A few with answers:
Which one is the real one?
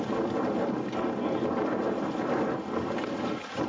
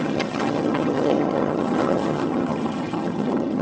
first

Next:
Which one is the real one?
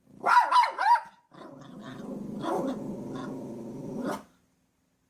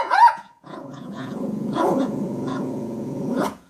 first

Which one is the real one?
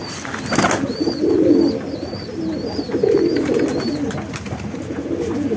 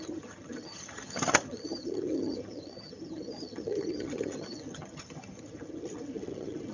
first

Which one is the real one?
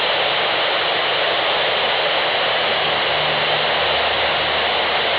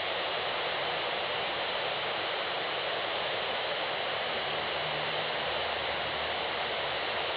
first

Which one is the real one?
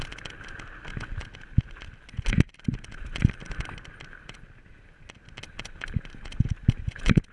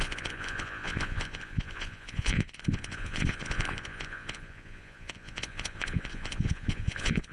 first